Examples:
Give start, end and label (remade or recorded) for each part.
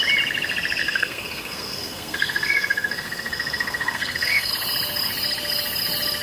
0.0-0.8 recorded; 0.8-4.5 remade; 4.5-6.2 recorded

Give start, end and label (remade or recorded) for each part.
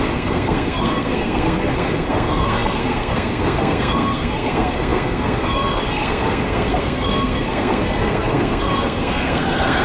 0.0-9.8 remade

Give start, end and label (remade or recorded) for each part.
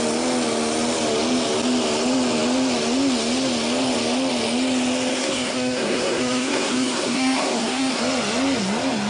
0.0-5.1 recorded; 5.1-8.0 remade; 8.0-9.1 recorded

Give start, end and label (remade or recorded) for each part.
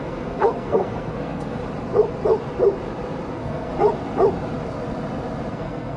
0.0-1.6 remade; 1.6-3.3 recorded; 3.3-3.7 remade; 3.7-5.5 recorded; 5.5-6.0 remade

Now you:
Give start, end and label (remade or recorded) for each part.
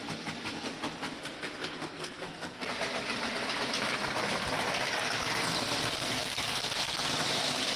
0.0-1.2 recorded; 1.2-2.7 remade; 2.7-6.0 recorded; 6.0-7.1 remade; 7.1-7.8 recorded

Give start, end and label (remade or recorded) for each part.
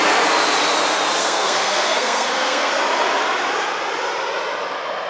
0.0-1.2 recorded; 1.2-2.7 remade; 2.7-5.1 recorded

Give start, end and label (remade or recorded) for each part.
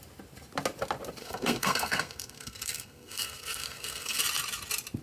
0.0-1.2 recorded; 1.2-4.2 remade; 4.2-5.0 recorded